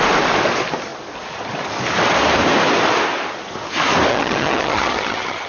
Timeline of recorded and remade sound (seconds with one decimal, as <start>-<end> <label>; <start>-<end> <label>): 0.0-4.1 recorded; 4.1-5.5 remade